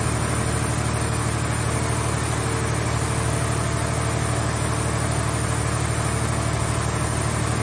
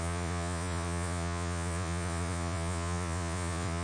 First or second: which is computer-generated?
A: second